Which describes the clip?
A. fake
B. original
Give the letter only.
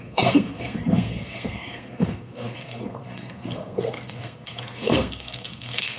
A